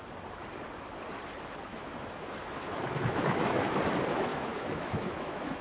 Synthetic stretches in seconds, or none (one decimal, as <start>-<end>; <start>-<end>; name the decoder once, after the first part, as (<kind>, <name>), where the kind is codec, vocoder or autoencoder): 1.7-3.8 (autoencoder, DAC-VAE); 4.3-5.6

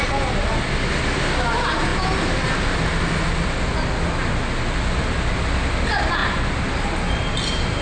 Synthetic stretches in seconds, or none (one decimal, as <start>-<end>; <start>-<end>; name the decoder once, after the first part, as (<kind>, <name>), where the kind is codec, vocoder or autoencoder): none

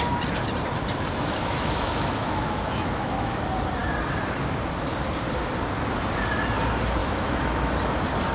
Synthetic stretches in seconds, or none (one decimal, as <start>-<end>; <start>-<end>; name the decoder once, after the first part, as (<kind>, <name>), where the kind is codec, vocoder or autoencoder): 1.4-3.4 (autoencoder, DAC-VAE); 7.0-7.7

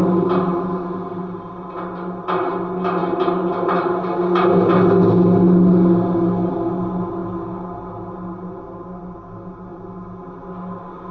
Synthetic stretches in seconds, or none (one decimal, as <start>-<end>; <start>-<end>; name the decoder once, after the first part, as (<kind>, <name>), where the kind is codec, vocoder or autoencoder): none

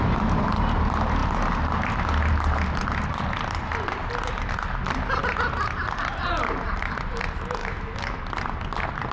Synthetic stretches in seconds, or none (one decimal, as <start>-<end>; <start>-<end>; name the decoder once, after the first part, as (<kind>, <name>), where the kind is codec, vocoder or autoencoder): 7.6-8.2 (autoencoder, DAC-VAE)

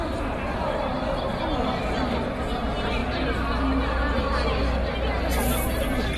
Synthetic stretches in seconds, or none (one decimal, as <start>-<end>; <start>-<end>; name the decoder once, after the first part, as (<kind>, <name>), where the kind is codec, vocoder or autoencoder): none

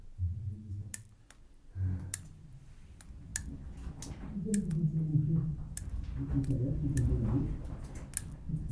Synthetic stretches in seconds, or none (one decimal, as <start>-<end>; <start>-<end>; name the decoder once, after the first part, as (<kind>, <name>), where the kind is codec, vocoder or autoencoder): none

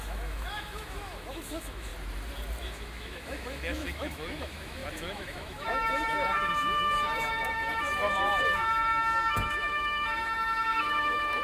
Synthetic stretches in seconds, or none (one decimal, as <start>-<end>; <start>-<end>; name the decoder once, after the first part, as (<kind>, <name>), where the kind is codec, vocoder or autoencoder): 0.0-1.9 (autoencoder, DAC-VAE); 2.6-11.4